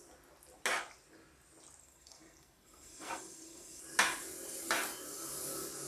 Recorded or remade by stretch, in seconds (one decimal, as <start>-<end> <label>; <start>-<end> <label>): 0.0-1.8 recorded; 1.8-3.8 remade; 3.8-5.9 recorded